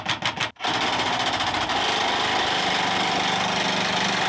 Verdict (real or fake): real